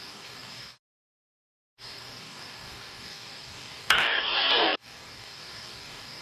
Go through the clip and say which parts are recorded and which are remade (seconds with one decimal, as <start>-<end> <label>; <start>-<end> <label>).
0.0-6.2 remade